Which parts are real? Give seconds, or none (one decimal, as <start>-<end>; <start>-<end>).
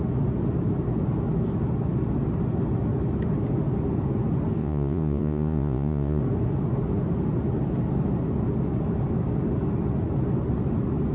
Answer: 0.0-4.6; 6.2-11.1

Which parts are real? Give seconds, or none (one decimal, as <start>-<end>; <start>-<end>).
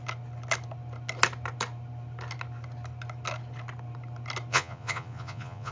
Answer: 0.0-4.5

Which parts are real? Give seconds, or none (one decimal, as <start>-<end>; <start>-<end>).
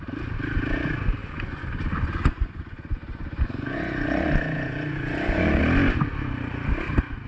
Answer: 0.0-1.2; 5.6-7.3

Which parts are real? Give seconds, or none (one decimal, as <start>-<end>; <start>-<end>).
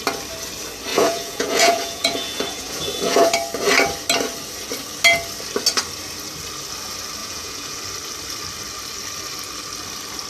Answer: 0.0-0.9; 3.3-7.2; 7.8-10.3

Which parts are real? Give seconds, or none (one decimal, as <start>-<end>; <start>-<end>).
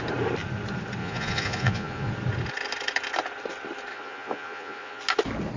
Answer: 0.0-1.0; 2.1-3.9; 5.0-5.6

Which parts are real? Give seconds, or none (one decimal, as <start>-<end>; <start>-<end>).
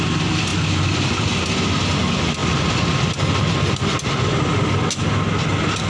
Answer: 0.0-5.9